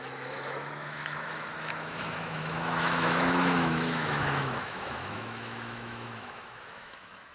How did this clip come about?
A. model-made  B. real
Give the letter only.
A